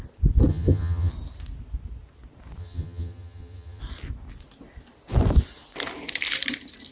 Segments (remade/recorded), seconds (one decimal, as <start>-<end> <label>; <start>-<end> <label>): 0.0-0.5 recorded; 0.5-1.1 remade; 1.1-2.6 recorded; 2.6-3.8 remade; 3.8-6.9 recorded